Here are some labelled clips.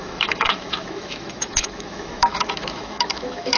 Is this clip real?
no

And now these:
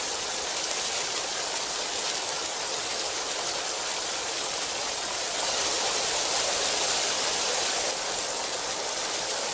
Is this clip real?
no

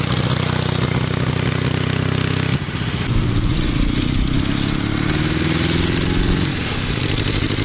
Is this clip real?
yes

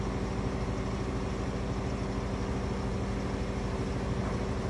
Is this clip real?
yes